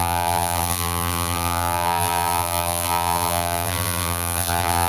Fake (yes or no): yes